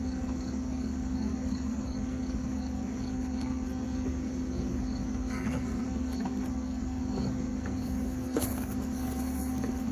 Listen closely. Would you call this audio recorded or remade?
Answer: remade